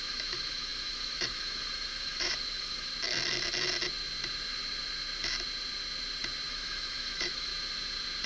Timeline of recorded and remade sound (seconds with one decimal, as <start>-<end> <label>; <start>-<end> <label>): 0.0-2.9 remade; 2.9-6.5 recorded; 6.5-7.5 remade; 7.5-8.3 recorded